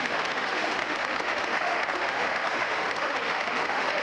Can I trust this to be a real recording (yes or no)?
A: no